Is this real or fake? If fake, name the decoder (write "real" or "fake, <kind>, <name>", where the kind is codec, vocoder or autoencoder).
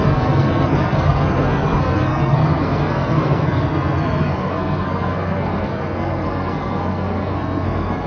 fake, codec, SNAC